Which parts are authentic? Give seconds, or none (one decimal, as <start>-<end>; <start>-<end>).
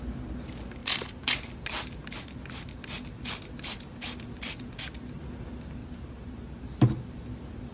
0.0-5.8; 7.3-7.7